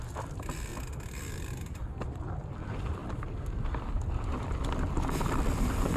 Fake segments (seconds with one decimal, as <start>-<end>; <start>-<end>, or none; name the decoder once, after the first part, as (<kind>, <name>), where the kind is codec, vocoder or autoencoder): 0.0-0.7 (vocoder, BigVGAN v2); 1.3-1.8; 2.4-6.0